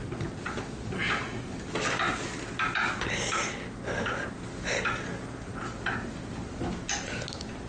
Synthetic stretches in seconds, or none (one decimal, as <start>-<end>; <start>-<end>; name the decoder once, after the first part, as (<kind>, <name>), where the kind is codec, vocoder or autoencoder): none